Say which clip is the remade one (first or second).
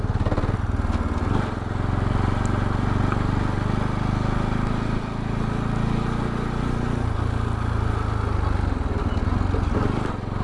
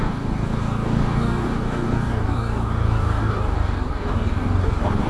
second